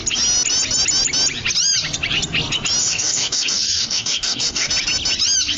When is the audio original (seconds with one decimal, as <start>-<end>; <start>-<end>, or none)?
0.0-2.8; 4.7-5.6